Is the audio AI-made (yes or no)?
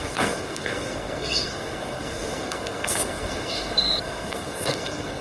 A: yes